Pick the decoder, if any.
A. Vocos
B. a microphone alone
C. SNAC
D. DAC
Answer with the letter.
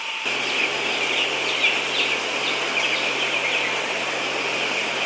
B